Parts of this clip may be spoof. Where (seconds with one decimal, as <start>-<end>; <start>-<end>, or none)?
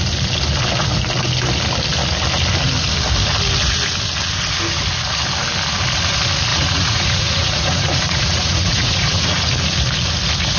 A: 6.5-9.5